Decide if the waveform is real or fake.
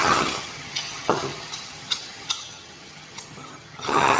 fake